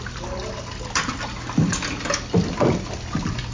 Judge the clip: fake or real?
real